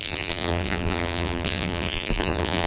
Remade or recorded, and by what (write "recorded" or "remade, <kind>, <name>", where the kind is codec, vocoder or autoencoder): remade, vocoder, BigVGAN v2